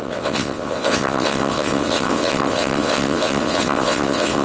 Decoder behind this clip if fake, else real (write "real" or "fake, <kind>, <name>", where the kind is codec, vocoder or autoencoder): fake, vocoder, WaveNeXt